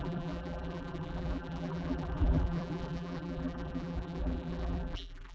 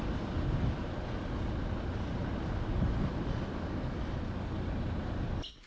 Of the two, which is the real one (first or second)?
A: second